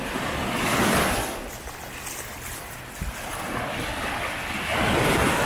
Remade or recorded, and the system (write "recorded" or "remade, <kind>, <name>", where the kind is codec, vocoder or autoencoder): recorded